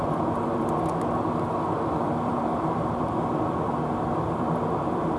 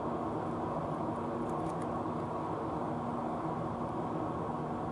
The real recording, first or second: second